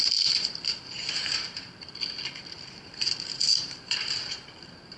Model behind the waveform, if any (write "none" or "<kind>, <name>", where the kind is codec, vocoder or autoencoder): vocoder, BigVGAN v2